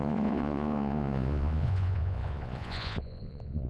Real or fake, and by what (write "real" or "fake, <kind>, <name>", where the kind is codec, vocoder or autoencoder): fake, vocoder, Vocos